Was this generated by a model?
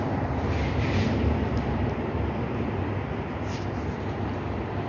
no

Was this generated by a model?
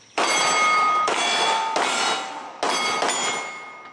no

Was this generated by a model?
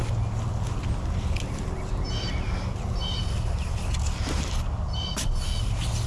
no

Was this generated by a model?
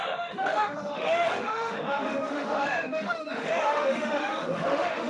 yes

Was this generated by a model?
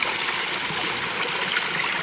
no